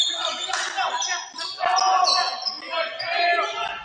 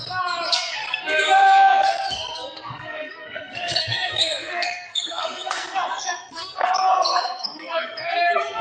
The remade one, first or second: second